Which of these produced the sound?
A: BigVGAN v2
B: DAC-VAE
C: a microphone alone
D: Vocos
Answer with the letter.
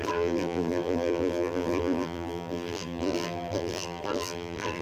A